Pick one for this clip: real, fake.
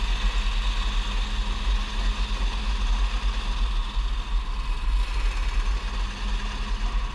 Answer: real